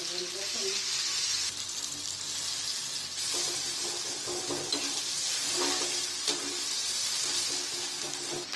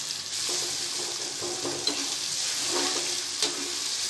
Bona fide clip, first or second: first